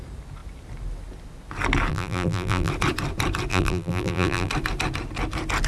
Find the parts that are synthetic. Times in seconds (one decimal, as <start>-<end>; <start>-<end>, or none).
1.9-2.7; 3.5-4.5